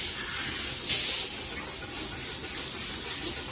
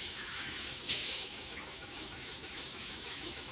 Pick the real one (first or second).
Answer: first